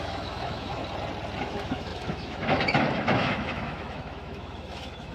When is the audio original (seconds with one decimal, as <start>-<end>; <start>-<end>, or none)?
0.8-1.4